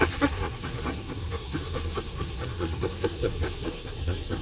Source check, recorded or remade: remade